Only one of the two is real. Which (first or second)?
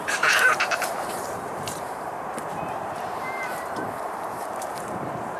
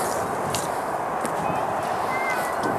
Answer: second